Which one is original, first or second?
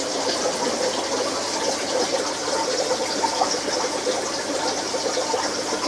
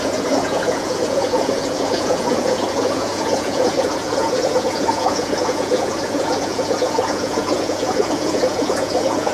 first